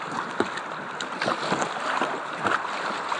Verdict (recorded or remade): recorded